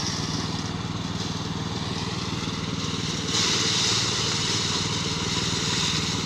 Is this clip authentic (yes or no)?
yes